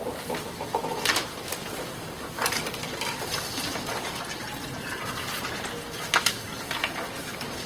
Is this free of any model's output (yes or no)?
no